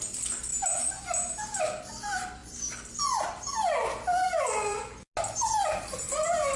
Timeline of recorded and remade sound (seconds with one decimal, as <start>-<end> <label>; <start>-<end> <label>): 0.0-6.6 recorded

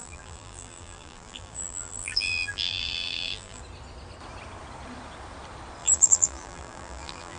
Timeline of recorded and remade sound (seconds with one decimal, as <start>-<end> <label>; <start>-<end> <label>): 0.0-3.6 remade; 3.6-5.8 recorded; 5.8-7.4 remade

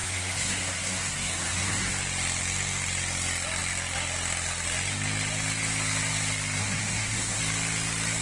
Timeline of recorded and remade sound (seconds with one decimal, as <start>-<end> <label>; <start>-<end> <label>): 0.0-1.9 remade; 1.9-6.6 recorded; 6.6-7.4 remade; 7.4-8.2 recorded